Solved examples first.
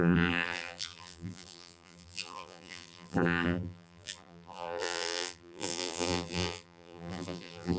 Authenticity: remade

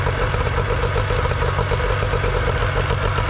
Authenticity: recorded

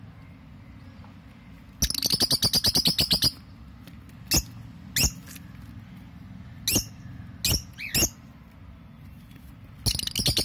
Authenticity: recorded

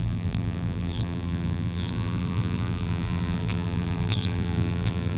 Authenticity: remade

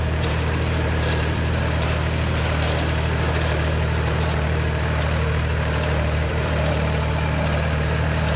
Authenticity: remade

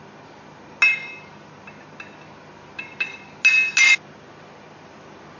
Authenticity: recorded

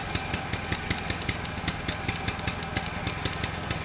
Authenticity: recorded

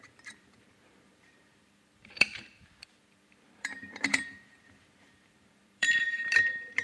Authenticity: remade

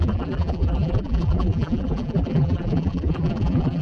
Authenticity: remade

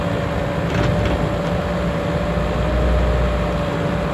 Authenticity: recorded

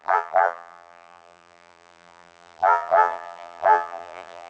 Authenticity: remade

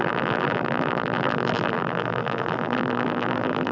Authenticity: remade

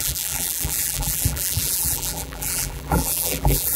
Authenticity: remade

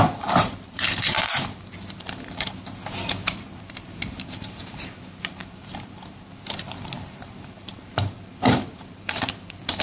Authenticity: remade